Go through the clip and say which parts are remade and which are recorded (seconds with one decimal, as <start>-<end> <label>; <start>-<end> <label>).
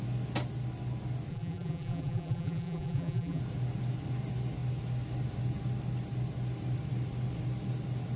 0.0-1.3 recorded; 1.3-3.4 remade; 3.4-8.2 recorded